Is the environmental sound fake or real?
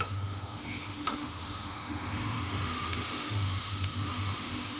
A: fake